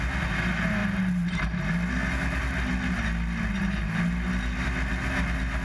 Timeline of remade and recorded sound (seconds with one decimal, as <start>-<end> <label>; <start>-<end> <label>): 0.0-5.6 recorded